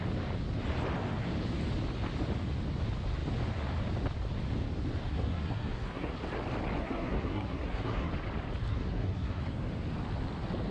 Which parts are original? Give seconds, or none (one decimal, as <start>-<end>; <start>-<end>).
0.0-5.1; 6.1-6.8; 8.1-8.7; 9.4-10.7